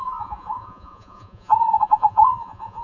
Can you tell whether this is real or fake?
fake